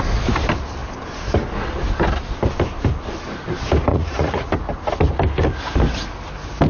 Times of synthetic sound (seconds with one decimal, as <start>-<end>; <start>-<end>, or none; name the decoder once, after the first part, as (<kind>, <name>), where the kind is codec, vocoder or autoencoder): 3.9-4.5 (vocoder, Vocos)